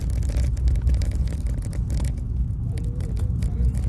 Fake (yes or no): no